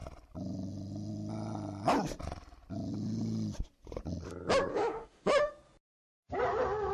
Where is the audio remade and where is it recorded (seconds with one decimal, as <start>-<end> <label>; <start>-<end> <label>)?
0.0-4.7 recorded; 4.7-5.5 remade; 5.5-6.9 recorded